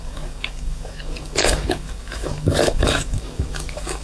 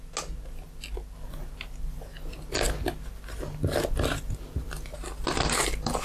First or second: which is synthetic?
first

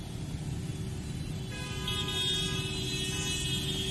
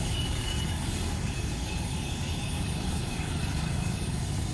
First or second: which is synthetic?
second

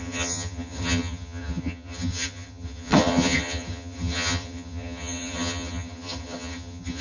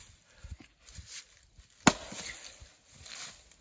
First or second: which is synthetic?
first